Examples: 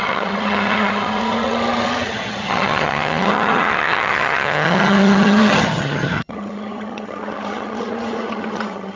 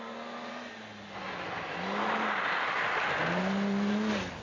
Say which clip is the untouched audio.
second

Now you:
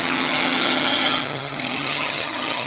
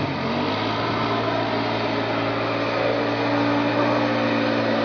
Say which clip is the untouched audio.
second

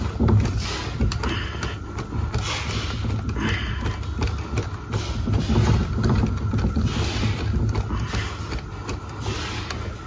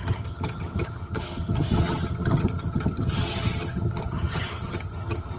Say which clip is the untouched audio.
first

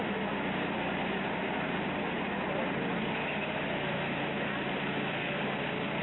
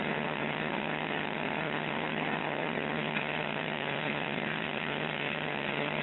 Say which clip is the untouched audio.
first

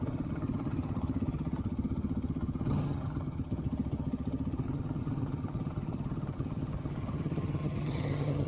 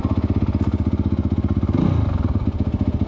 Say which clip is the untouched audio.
second